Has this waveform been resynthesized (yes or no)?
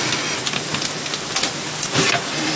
no